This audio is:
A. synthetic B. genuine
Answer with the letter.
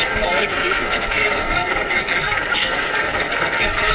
A